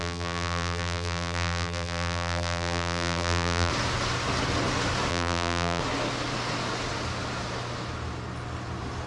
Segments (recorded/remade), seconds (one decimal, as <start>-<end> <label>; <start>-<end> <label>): 0.0-3.7 remade; 3.7-5.1 recorded; 5.1-5.8 remade; 5.8-9.1 recorded